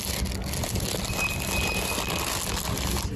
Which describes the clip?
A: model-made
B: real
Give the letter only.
B